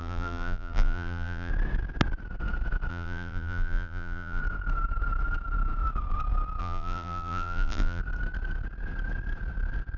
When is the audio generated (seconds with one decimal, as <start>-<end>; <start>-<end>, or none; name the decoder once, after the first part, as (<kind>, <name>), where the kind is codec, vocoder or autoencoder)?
0.0-1.5 (vocoder, BigVGAN v2); 2.9-4.4; 6.6-8.0